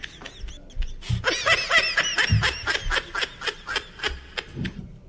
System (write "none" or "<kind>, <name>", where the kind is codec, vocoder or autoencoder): none